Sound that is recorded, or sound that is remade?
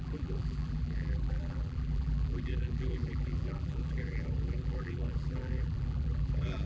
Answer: remade